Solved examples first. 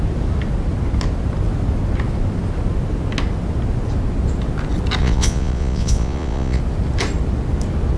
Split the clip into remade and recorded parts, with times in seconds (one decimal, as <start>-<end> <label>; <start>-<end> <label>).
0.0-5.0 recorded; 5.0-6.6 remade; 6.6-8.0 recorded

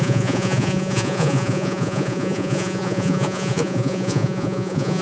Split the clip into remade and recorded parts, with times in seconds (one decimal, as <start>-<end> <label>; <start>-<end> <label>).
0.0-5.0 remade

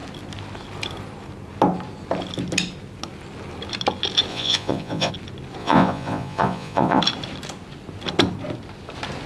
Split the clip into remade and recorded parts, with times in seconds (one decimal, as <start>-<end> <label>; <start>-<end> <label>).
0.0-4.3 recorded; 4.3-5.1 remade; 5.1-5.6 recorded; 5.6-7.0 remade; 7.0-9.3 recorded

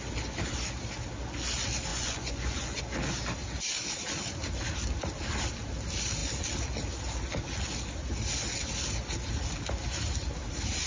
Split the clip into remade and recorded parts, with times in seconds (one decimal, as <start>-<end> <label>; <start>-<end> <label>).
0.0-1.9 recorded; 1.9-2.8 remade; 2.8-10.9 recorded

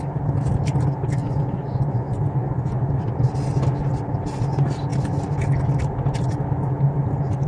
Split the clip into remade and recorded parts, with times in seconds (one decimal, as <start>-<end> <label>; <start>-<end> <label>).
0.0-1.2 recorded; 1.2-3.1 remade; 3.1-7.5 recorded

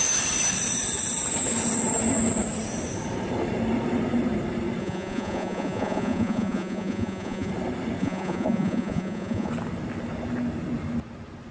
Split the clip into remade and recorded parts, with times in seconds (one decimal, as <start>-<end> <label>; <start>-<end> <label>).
0.0-4.8 recorded; 4.8-7.5 remade; 7.5-8.0 recorded; 8.0-9.5 remade; 9.5-11.5 recorded

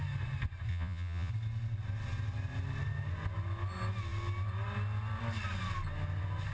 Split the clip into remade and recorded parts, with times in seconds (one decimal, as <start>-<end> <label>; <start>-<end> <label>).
0.0-0.7 recorded; 0.7-1.3 remade; 1.3-6.5 recorded